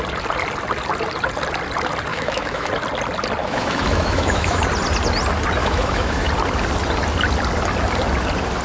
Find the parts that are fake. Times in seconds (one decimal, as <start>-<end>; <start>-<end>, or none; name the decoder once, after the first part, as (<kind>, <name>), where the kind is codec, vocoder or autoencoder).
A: 2.1-2.7 (autoencoder, DAC-VAE); 3.4-4.6; 5.6-6.3